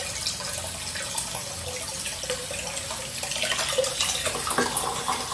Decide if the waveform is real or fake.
real